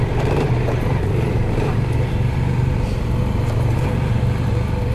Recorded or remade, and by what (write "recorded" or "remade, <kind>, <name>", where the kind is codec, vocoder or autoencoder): remade, vocoder, BigVGAN v2